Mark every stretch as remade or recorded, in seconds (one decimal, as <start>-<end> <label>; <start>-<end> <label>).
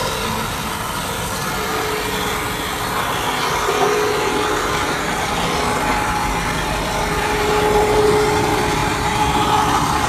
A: 0.0-8.8 recorded; 8.8-10.1 remade